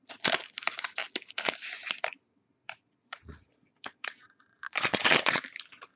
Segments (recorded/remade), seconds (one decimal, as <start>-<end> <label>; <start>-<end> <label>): 0.0-2.6 recorded; 2.6-5.4 remade; 5.4-6.0 recorded